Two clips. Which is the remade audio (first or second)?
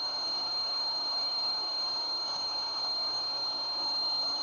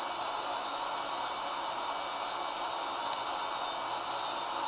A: first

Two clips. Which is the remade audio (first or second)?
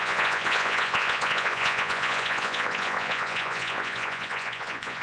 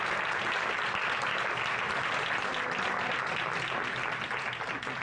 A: first